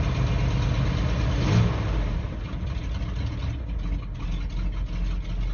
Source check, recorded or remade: recorded